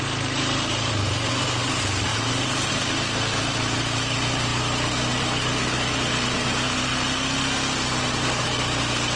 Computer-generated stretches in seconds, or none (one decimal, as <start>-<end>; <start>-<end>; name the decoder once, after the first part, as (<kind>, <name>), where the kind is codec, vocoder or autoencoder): none